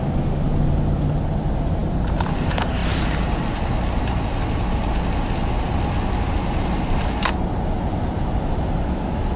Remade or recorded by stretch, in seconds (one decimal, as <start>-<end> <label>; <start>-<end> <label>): 0.0-9.4 recorded